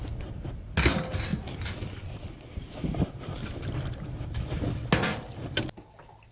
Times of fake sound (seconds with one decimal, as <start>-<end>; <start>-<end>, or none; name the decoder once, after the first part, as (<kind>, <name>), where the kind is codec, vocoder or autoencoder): none